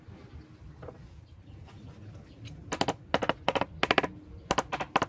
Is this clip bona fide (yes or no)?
yes